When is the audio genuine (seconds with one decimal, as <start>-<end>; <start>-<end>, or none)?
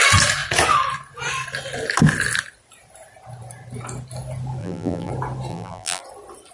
0.0-4.6; 5.1-5.5; 6.0-6.5